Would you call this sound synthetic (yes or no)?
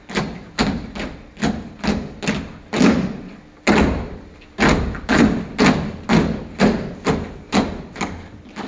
no